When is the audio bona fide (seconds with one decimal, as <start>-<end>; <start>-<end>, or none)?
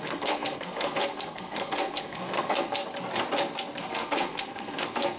2.8-3.8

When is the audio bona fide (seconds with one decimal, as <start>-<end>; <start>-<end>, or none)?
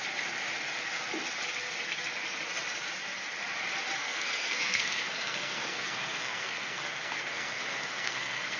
0.0-4.0